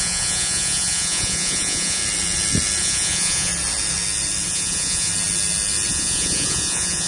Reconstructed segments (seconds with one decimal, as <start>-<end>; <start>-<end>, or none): 0.0-2.0; 2.8-3.5; 4.5-5.1; 5.9-7.1

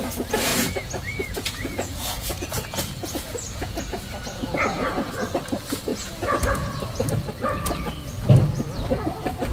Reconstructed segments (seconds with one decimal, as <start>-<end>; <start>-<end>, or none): 0.5-5.1; 5.9-6.8

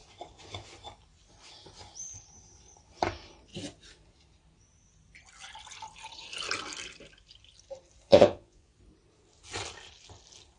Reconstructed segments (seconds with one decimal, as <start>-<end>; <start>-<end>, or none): 8.1-8.7

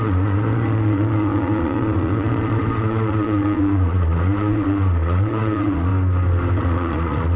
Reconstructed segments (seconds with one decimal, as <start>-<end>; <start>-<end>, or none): 0.0-5.9; 6.6-7.4

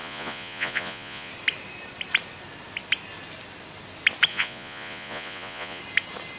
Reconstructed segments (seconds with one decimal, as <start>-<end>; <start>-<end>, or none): 0.0-1.3; 4.3-5.8

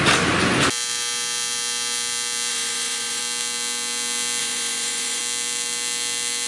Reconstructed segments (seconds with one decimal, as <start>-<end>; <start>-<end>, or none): 2.5-3.2; 4.4-5.2

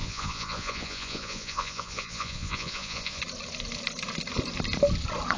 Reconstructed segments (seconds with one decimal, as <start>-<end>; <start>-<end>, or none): 0.0-3.2

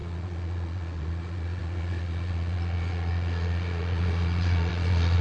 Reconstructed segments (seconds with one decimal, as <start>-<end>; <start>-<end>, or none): 0.0-5.2